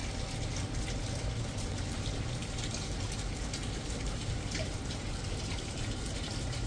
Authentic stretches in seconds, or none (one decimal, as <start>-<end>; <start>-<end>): 0.0-1.4